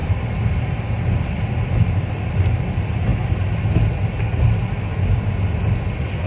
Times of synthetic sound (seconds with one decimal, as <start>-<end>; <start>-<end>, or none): 0.0-2.4